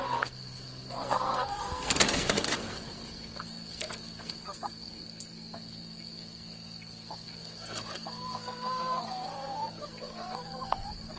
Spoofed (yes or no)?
yes